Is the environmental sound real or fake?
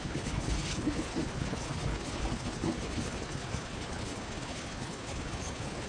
fake